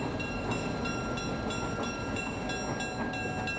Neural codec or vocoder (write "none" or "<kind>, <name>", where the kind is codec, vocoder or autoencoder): none